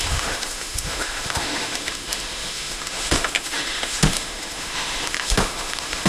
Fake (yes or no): yes